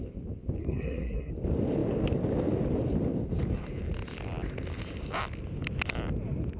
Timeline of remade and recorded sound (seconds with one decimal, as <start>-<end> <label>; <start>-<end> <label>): 0.0-0.6 recorded; 0.6-1.3 remade; 1.3-6.6 recorded